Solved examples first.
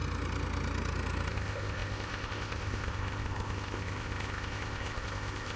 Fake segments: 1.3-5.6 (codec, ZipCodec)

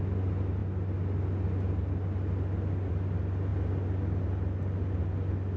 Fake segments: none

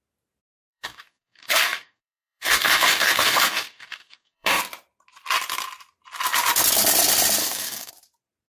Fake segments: 0.4-4.6 (codec, DAC); 7.4-7.9

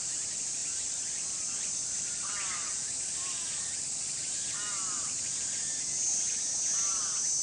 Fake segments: none

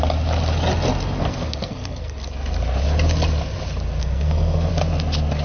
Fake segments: 1.2-2.3 (codec, SNAC); 4.0-4.7

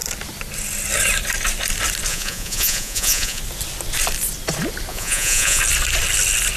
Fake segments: 2.1-3.4 (vocoder, Vocos); 4.9-5.6